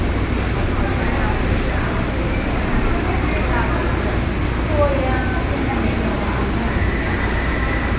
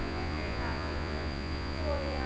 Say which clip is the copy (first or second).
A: second